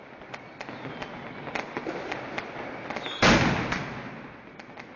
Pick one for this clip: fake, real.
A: real